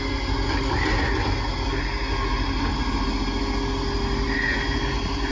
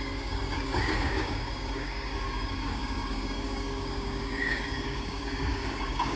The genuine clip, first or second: first